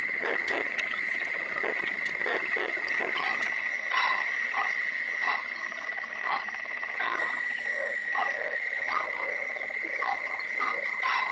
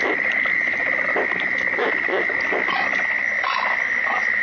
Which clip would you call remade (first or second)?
first